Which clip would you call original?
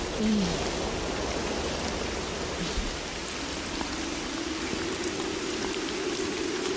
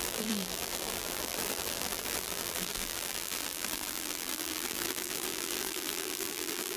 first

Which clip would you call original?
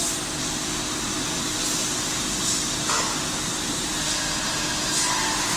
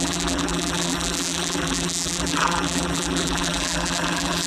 first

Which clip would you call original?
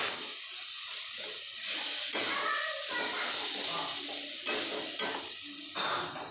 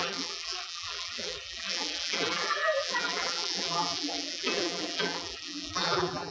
first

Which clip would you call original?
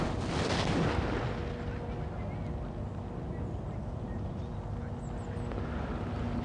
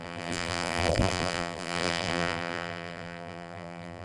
first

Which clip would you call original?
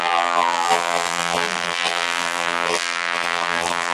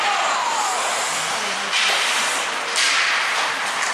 second